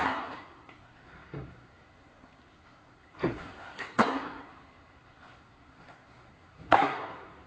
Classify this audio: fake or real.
fake